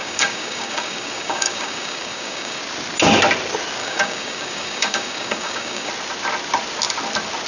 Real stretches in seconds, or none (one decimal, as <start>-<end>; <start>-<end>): 2.6-3.8; 5.9-7.5